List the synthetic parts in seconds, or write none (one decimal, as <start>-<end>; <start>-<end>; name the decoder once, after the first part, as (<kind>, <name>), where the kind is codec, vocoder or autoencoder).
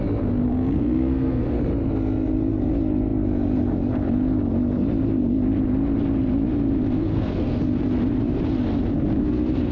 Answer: 0.5-1.6 (codec, SNAC); 7.0-7.6